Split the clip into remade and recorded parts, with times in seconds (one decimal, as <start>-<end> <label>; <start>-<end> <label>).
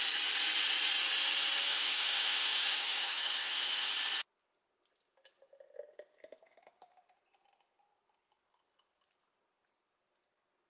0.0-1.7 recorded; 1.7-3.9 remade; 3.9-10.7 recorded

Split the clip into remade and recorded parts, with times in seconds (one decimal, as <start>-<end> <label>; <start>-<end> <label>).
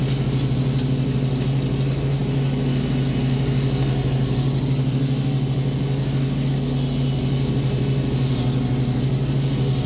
0.0-9.9 recorded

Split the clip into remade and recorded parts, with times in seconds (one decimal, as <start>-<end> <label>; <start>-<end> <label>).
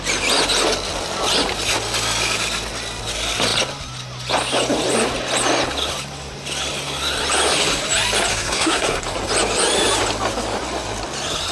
0.0-8.3 recorded; 8.3-9.0 remade; 9.0-11.5 recorded